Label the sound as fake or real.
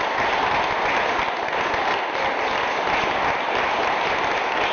real